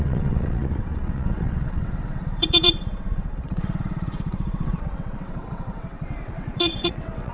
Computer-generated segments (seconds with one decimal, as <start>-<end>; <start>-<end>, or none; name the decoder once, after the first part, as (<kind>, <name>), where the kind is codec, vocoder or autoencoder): 0.0-7.3 (vocoder, WaveNeXt)